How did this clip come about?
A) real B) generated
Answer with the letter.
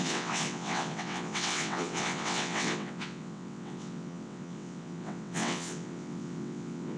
B